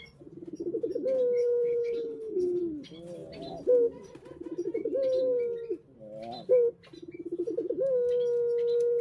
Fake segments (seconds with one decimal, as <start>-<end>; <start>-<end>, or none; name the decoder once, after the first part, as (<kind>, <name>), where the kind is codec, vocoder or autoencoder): 1.4-2.6 (codec, HILCodec)